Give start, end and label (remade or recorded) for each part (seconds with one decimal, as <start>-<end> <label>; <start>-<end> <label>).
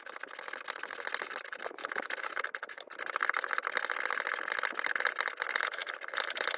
0.0-6.6 recorded